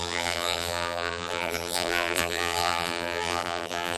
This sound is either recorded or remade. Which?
remade